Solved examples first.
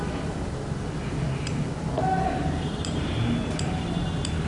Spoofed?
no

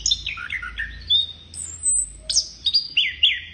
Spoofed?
no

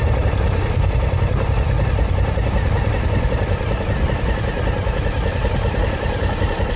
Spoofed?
no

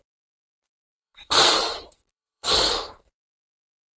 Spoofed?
yes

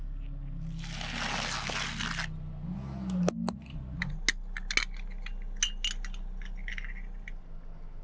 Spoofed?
no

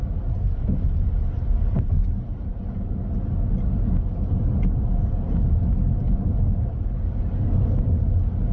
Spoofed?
no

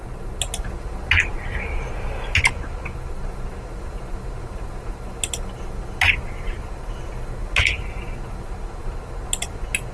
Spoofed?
no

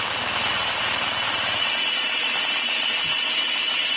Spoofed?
yes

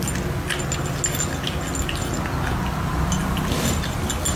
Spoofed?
no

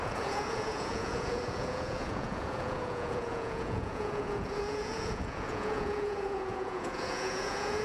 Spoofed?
yes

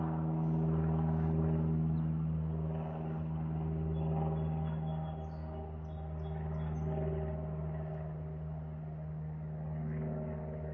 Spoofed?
no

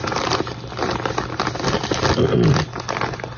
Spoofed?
no